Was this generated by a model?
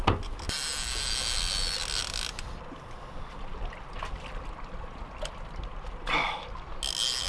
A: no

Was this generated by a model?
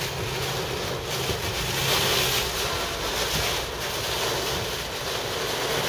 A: no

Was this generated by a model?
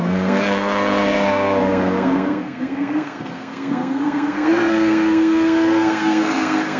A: yes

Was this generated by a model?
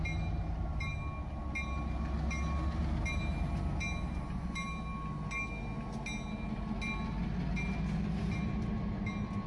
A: no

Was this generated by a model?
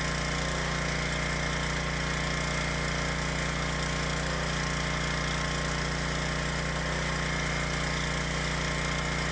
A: no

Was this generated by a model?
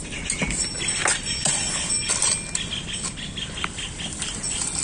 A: no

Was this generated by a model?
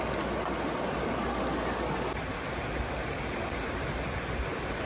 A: no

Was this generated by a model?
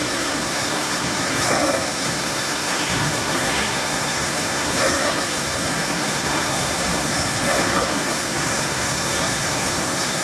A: yes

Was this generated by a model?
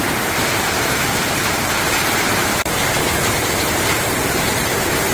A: yes